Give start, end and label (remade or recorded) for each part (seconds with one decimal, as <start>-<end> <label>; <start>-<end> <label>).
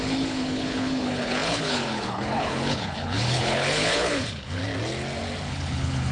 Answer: 0.0-4.6 remade; 4.6-5.5 recorded; 5.5-6.1 remade